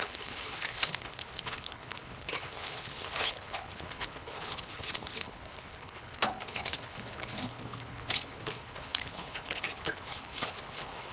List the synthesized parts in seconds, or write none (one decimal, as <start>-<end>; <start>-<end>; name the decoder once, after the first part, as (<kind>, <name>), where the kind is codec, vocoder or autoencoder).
0.0-11.1 (codec, HILCodec)